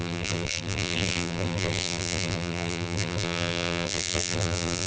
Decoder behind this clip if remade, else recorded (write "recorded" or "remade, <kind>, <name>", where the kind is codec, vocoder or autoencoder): remade, vocoder, BigVGAN v2